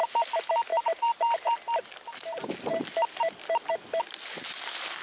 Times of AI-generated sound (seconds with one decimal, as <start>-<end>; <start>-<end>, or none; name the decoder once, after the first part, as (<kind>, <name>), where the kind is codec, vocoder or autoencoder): none